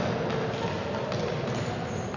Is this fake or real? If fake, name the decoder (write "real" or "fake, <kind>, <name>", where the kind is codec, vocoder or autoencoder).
real